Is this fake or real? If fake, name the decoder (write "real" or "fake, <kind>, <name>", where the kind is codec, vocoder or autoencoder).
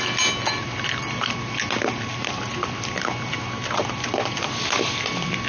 real